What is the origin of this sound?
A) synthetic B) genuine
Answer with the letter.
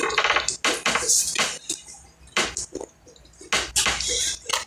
B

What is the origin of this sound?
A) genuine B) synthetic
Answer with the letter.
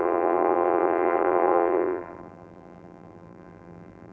B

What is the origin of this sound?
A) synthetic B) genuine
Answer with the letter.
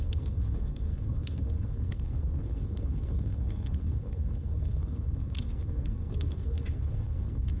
A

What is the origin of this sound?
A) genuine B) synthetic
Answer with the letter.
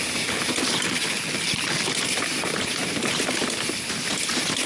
A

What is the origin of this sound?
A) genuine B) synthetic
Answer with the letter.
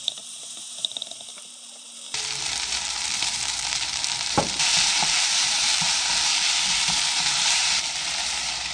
B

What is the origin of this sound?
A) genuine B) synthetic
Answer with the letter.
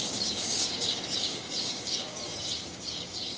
B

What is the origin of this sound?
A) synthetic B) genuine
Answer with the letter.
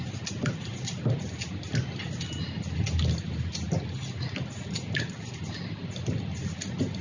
B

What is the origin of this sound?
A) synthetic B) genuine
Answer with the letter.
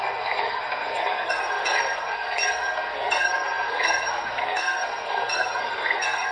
A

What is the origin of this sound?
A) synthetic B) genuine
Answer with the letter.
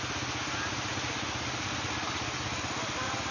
B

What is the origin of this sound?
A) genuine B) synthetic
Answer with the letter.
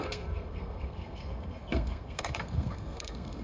B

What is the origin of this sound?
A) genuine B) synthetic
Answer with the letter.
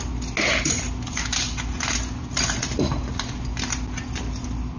A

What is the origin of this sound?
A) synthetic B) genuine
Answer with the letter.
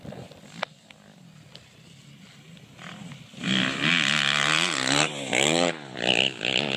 B